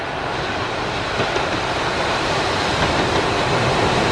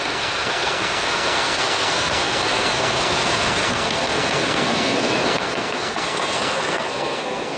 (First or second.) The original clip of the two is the first